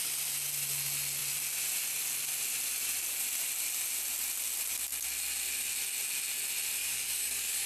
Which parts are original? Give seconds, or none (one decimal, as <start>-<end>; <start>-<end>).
0.0-6.8